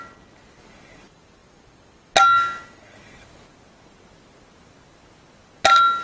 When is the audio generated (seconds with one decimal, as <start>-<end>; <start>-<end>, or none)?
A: none